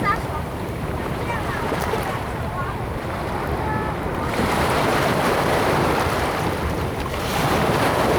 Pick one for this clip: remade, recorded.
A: remade